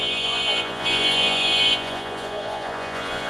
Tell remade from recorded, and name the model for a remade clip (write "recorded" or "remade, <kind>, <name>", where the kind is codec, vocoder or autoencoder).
remade, vocoder, Vocos